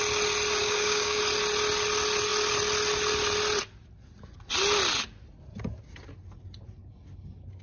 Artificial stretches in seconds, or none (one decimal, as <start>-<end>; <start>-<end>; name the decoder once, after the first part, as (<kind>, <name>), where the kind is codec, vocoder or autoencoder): 0.6-1.2 (codec, DAC)